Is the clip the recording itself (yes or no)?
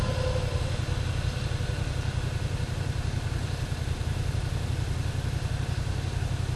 yes